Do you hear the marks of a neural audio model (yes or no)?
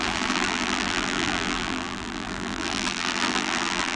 yes